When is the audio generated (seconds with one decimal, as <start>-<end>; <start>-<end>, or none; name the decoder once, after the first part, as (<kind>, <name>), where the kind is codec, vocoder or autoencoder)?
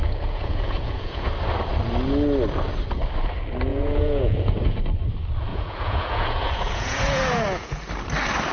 0.0-1.3 (vocoder, Vocos); 3.7-4.8; 5.5-7.9